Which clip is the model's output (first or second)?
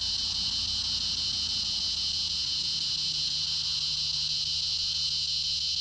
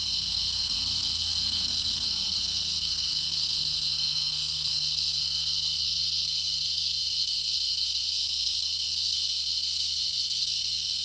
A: second